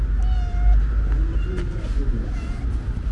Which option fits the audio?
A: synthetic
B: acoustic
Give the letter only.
B